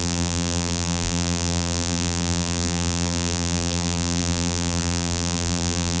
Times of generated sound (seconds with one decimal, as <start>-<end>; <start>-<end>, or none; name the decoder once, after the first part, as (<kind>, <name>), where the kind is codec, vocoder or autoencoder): 0.0-6.0 (vocoder, BigVGAN v2)